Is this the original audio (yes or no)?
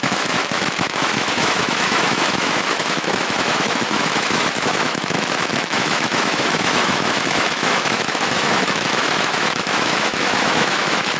no